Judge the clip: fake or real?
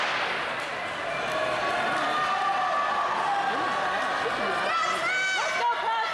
real